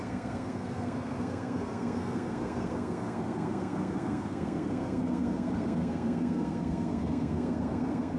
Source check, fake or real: fake